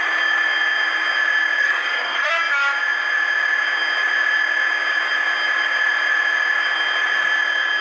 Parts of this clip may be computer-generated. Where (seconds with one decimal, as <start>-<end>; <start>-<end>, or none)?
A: 1.6-2.3